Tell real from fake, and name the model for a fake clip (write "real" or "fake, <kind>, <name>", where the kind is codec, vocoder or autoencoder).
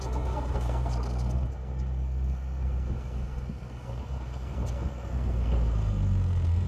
fake, codec, SNAC